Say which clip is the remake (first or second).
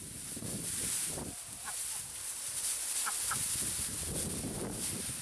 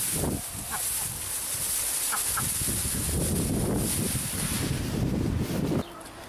first